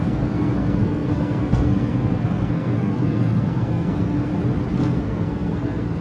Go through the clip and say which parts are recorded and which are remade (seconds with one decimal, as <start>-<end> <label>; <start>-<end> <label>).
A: 0.0-4.3 remade; 4.3-4.8 recorded; 4.8-6.0 remade